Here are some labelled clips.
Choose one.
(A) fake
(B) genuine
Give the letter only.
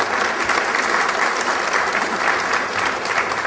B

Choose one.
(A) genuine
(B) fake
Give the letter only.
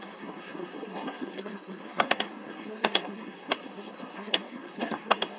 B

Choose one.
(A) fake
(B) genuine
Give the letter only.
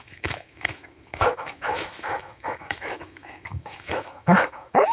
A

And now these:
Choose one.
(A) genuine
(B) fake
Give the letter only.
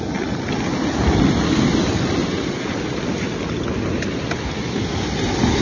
A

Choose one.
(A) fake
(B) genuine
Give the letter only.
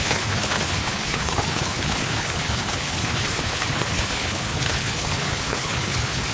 A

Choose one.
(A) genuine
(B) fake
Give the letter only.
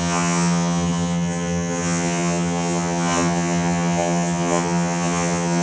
B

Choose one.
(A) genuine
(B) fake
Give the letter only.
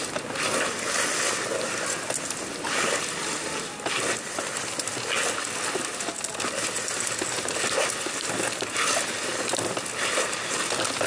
A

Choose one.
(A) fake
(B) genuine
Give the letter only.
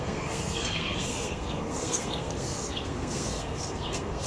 A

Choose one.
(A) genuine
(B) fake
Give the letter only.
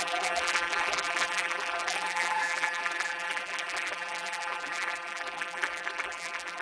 B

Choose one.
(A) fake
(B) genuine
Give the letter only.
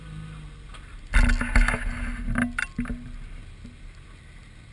B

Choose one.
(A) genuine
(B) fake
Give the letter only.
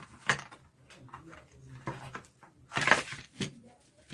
A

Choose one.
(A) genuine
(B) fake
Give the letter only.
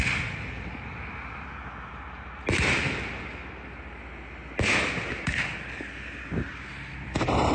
A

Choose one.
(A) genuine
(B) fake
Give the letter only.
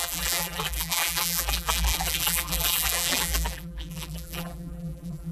B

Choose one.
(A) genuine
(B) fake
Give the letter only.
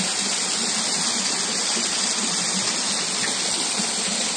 A